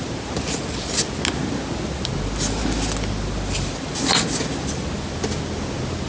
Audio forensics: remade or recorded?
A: recorded